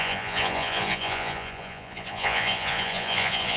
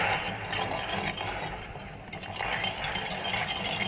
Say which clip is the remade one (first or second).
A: first